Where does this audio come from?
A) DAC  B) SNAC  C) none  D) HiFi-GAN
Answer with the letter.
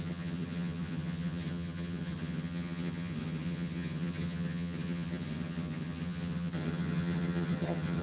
D